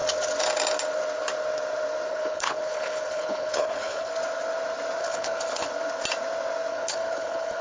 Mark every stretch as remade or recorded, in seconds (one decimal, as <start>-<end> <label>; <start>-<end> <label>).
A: 0.0-2.1 recorded; 2.1-4.1 remade; 4.1-5.0 recorded; 5.0-5.7 remade; 5.7-6.7 recorded; 6.7-7.6 remade